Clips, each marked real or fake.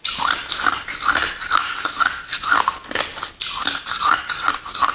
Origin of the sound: real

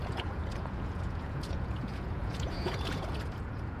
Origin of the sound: fake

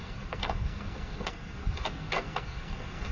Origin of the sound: fake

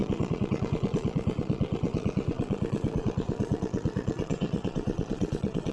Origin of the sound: fake